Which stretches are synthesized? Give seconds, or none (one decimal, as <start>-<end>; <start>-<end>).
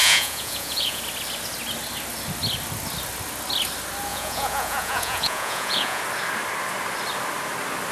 0.0-1.0; 4.1-6.0